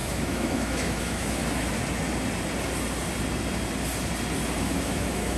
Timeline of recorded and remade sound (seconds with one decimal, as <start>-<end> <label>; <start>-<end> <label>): 0.0-1.4 remade; 1.4-4.6 recorded; 4.6-5.4 remade